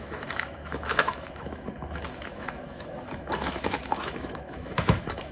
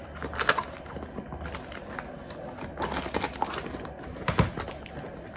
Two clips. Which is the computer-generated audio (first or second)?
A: first